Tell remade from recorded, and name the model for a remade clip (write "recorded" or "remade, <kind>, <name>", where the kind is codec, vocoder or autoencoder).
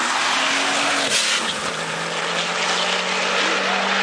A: recorded